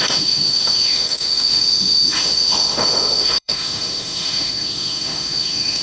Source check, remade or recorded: remade